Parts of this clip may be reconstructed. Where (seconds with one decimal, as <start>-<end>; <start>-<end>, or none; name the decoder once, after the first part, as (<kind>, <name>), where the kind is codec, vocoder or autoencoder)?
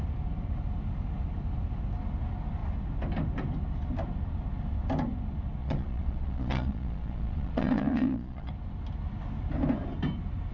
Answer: 5.6-8.5 (vocoder, Vocos)